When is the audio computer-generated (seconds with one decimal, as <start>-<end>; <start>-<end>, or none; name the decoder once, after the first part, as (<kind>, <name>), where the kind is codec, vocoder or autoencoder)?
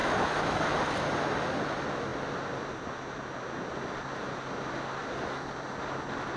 0.0-0.6 (autoencoder, DAC-VAE)